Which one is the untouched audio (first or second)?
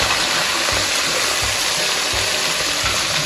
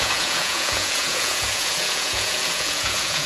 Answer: first